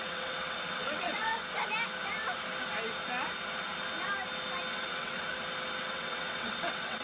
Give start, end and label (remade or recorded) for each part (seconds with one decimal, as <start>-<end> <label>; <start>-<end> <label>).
0.0-1.3 remade; 1.3-4.7 recorded; 4.7-5.3 remade; 5.3-5.8 recorded; 5.8-7.0 remade